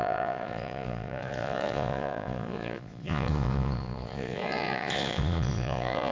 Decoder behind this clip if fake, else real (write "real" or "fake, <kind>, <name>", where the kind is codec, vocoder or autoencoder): fake, vocoder, Vocos